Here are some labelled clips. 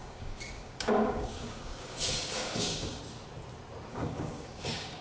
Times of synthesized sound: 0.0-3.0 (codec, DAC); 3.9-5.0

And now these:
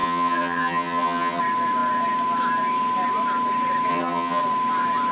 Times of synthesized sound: 0.0-1.4 (vocoder, HiFi-GAN); 3.9-4.4

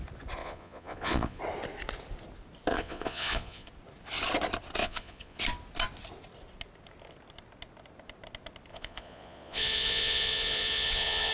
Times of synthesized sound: 0.4-1.4 (vocoder, Vocos); 2.7-3.7; 4.8-5.4; 8.7-11.3

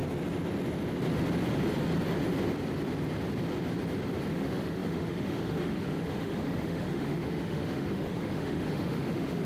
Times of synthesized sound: 4.3-9.4 (autoencoder, DAC-VAE)

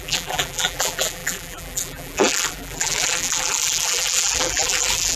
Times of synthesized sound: 0.0-5.2 (vocoder, BigVGAN v2)

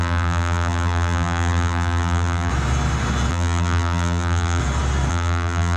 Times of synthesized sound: 0.0-2.5 (vocoder, BigVGAN v2); 3.3-4.6; 5.1-5.8